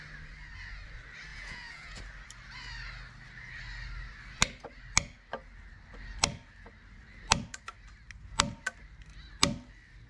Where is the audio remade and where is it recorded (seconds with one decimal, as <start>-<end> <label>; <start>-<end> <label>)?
0.0-1.3 recorded; 1.3-2.0 remade; 2.0-10.1 recorded